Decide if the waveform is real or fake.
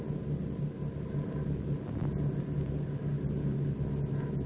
real